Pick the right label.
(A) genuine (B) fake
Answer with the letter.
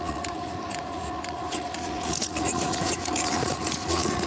B